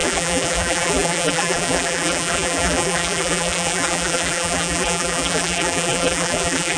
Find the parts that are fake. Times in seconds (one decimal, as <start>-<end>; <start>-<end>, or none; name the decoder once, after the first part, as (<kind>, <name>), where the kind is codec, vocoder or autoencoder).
0.0-6.8 (vocoder, BigVGAN v2)